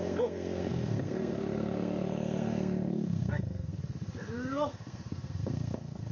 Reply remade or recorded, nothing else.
remade